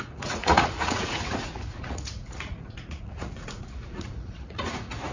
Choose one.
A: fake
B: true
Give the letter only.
A